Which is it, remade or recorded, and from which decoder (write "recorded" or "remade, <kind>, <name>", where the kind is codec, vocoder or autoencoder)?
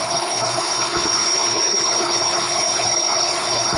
remade, codec, HILCodec